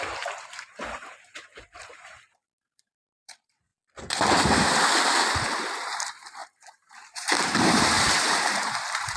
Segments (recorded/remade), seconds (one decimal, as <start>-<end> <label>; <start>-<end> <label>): 0.0-3.7 remade; 3.7-5.0 recorded; 5.0-9.2 remade